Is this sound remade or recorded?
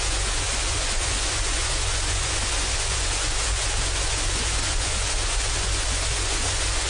remade